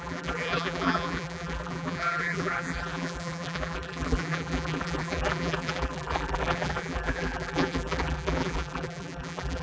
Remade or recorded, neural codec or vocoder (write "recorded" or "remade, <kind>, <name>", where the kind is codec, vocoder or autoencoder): remade, vocoder, BigVGAN v2